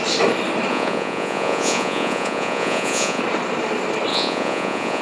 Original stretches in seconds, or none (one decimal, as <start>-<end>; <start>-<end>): 0.0-0.7; 3.2-4.1